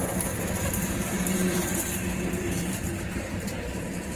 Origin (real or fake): fake